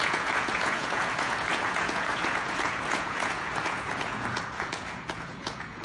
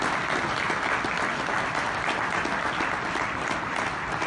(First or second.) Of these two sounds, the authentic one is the second